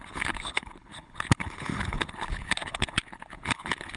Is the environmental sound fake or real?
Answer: fake